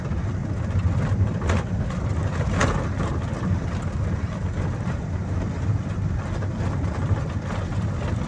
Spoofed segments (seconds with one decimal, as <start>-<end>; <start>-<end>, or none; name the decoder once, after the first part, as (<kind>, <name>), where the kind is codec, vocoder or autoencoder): none